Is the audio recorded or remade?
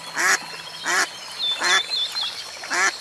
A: recorded